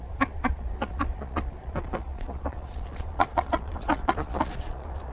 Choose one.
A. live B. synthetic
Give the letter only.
B